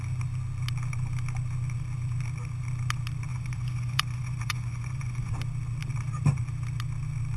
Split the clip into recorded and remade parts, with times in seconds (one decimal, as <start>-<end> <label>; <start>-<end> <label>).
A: 0.0-3.3 recorded; 3.3-5.3 remade; 5.3-7.4 recorded